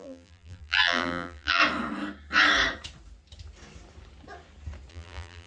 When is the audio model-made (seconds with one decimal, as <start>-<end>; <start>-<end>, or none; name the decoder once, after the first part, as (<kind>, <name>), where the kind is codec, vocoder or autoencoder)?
0.0-1.6 (vocoder, BigVGAN v2); 4.9-5.5